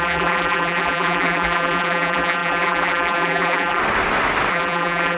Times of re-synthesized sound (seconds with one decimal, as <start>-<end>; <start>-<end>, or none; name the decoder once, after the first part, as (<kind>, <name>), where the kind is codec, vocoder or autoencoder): 0.0-3.8 (vocoder, BigVGAN v2); 4.5-5.2